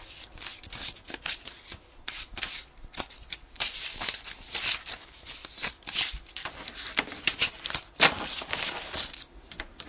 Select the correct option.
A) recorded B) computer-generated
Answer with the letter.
A